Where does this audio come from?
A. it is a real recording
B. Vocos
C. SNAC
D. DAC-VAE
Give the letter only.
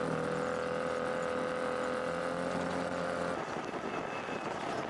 A